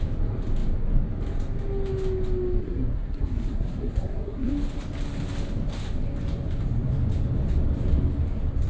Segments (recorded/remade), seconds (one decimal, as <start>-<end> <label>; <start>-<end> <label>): 0.0-2.6 recorded; 2.6-4.5 remade; 4.5-8.7 recorded